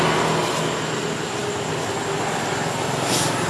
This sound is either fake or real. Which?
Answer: real